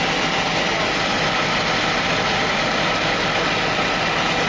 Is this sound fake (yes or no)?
no